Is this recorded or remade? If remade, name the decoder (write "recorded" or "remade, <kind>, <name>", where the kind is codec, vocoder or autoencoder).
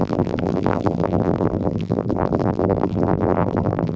remade, vocoder, BigVGAN v2